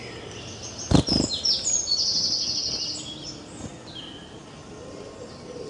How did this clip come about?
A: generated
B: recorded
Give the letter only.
B